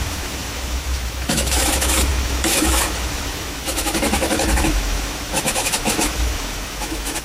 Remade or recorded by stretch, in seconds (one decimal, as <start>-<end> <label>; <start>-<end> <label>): 0.0-7.2 remade